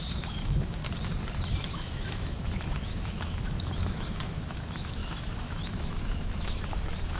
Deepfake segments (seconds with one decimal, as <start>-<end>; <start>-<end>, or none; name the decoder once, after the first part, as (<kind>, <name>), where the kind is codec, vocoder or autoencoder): 0.0-0.8 (autoencoder, DAC-VAE); 1.6-7.2